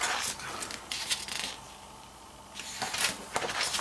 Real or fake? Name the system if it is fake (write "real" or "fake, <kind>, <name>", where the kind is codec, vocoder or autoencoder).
real